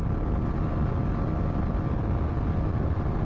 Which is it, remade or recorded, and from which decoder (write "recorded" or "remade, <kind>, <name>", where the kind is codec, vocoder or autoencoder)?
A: recorded